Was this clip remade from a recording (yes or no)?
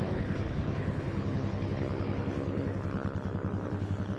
yes